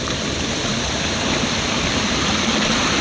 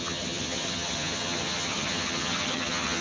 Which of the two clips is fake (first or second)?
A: second